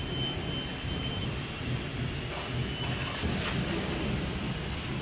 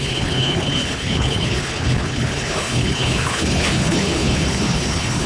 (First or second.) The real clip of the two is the first